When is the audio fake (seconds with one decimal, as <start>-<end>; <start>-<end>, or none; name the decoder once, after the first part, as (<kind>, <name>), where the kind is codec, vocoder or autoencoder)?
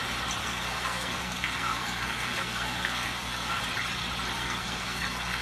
0.4-3.6 (codec, SNAC); 4.4-5.4